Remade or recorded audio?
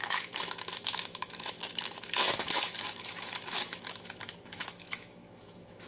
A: remade